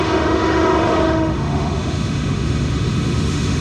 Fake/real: fake